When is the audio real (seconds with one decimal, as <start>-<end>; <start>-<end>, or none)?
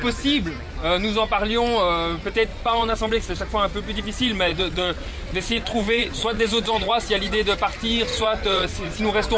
0.0-2.5; 3.4-4.5; 6.9-8.1; 9.0-9.4